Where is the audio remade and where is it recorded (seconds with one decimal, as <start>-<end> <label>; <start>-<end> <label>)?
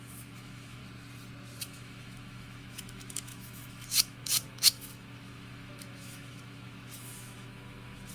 0.0-0.8 remade; 0.8-1.6 recorded; 1.6-8.1 remade